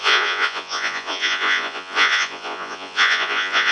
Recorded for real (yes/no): no